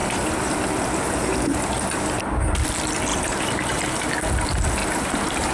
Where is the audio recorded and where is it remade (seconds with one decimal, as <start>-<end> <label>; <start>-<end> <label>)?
0.0-2.2 remade; 2.2-3.1 recorded; 3.1-4.1 remade; 4.1-4.8 recorded; 4.8-5.5 remade